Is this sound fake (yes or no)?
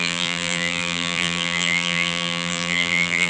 yes